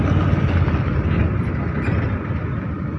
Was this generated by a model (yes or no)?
no